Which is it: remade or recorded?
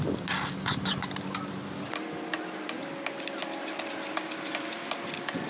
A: recorded